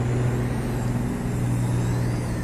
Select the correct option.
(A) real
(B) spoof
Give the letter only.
A